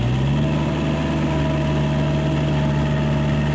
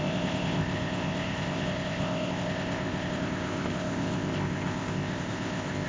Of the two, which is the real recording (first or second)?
first